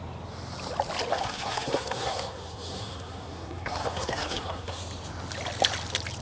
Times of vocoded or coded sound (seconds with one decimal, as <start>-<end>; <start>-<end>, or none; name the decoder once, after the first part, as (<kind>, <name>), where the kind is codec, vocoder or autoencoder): 1.1-4.8 (codec, SNAC)